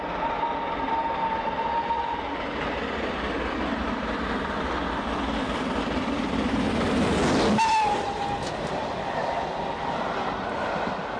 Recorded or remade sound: recorded